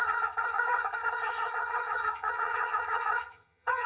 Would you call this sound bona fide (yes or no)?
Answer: no